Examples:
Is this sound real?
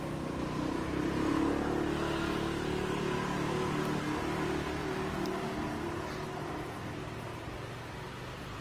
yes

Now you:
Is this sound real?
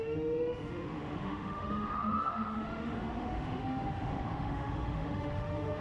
no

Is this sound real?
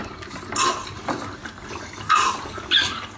yes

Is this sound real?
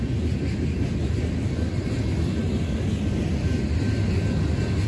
yes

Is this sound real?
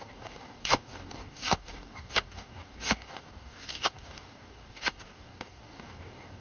no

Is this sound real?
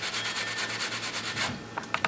yes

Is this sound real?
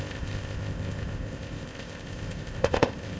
no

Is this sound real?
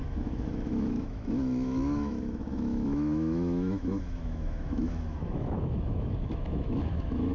no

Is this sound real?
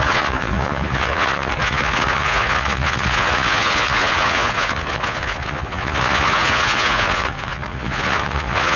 no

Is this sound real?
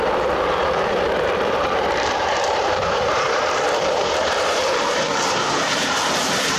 no